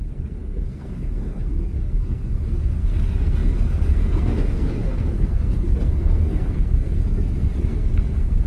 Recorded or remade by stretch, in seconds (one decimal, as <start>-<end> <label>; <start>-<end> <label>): 0.0-8.5 remade